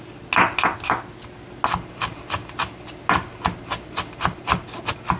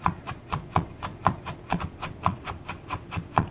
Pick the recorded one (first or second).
first